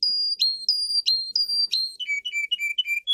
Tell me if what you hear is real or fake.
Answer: real